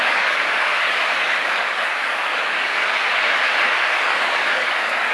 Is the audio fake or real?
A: fake